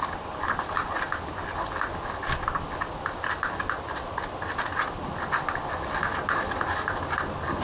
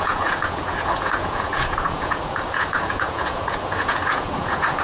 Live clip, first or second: first